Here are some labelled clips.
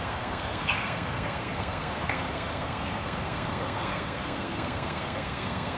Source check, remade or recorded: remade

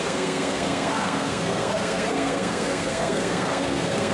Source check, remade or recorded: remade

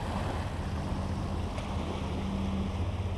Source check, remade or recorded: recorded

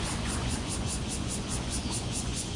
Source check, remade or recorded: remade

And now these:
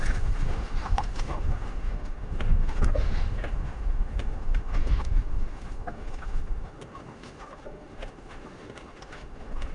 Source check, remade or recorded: remade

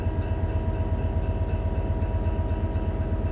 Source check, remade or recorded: recorded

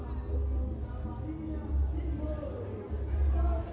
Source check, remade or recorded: recorded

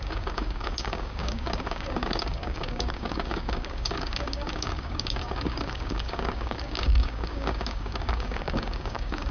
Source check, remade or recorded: remade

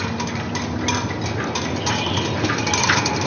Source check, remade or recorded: recorded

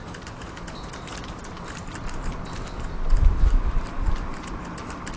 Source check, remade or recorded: recorded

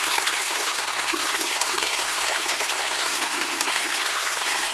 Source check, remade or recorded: remade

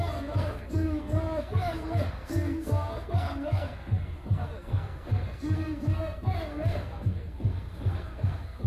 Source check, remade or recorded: remade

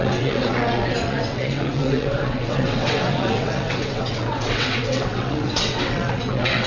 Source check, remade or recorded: remade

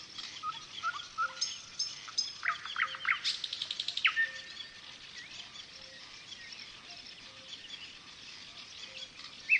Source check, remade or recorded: recorded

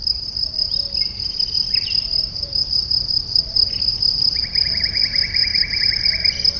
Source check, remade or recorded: remade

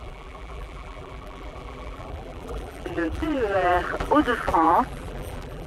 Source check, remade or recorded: remade